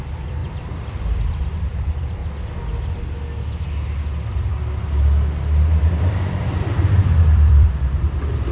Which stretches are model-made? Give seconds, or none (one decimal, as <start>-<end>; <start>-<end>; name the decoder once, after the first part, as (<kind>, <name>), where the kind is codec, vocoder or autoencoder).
0.0-2.2 (vocoder, BigVGAN v2); 6.0-8.5